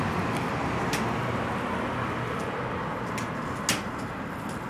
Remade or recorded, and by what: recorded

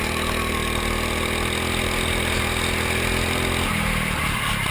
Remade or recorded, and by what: recorded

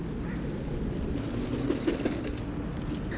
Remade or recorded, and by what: recorded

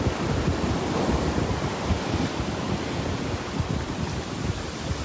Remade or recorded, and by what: remade, vocoder, BigVGAN v2